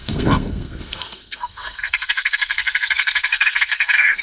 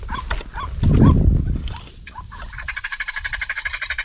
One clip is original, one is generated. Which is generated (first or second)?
first